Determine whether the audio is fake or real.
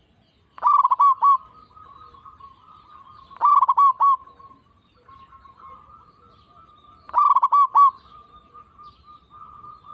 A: real